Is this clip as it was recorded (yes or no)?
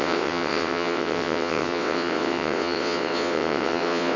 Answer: no